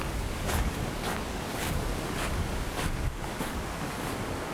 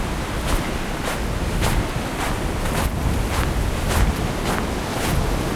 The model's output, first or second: first